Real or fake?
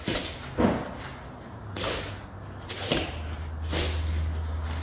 real